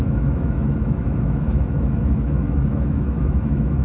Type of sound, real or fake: fake